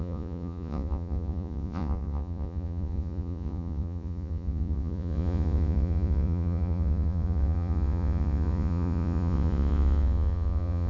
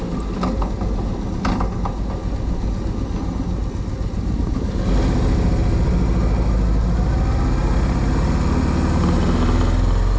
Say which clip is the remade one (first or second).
first